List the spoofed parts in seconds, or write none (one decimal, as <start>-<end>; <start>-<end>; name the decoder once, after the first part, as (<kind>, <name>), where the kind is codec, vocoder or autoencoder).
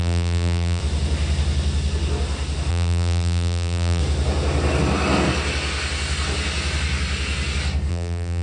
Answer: 0.0-0.8 (vocoder, BigVGAN v2); 2.7-4.0; 7.9-8.4